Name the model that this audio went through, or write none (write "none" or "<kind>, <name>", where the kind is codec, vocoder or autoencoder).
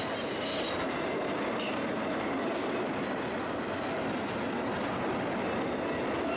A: none